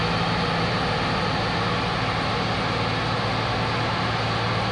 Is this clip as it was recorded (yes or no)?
yes